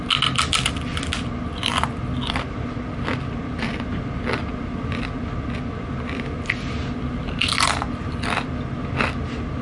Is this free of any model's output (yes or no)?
yes